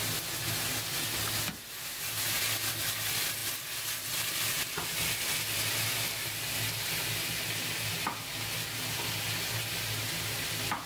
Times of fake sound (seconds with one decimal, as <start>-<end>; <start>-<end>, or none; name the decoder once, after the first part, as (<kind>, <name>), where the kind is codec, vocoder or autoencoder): none